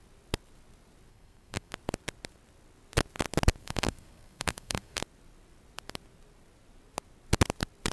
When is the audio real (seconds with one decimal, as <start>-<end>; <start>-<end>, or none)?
0.0-1.1; 1.7-3.6; 5.0-7.9